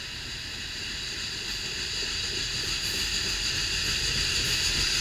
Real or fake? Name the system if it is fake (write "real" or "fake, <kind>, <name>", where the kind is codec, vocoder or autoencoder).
real